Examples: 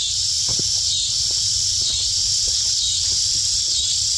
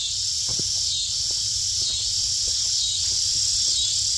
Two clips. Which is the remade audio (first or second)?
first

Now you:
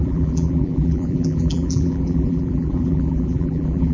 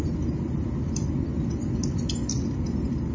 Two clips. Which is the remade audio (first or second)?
first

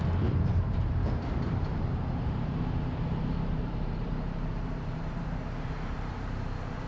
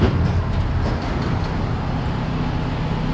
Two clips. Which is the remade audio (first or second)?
first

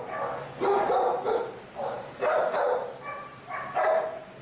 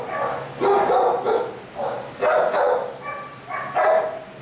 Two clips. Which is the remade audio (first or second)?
first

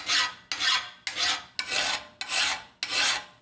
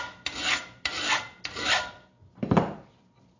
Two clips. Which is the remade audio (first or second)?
second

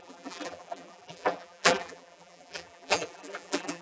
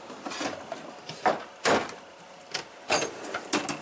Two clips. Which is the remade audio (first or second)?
first